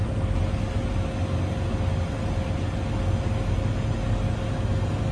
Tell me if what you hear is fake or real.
real